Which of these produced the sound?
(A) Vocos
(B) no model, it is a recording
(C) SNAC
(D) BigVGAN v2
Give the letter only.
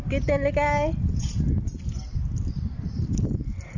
B